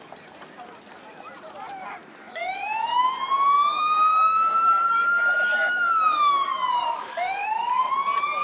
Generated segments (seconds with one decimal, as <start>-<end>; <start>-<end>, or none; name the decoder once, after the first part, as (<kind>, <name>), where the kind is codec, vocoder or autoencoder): 2.0-3.0 (codec, DAC); 3.8-8.0